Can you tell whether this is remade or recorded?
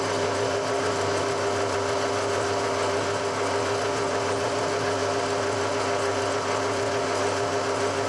recorded